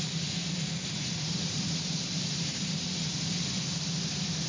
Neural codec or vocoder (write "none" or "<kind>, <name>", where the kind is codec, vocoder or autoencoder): none